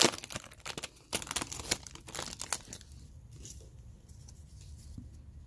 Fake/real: real